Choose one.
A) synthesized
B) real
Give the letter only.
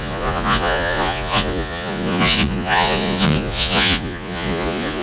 A